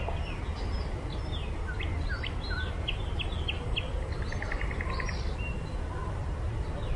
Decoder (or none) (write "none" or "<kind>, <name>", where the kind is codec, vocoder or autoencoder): none